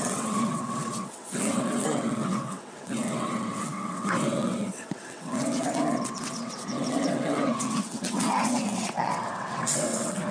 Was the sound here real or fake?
fake